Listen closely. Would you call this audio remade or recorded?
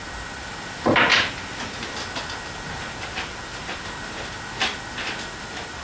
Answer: recorded